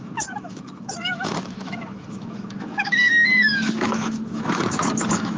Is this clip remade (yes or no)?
yes